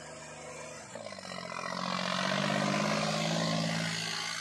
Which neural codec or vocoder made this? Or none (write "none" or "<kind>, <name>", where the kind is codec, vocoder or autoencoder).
none